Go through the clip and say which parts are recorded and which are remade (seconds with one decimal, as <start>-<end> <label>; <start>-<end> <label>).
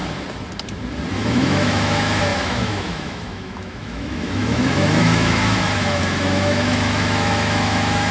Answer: 0.0-1.1 recorded; 1.1-8.1 remade